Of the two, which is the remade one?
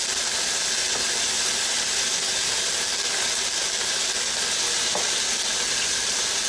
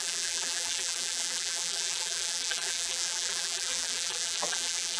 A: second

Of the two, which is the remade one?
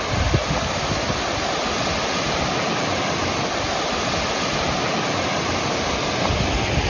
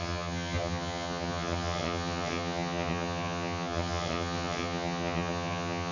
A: second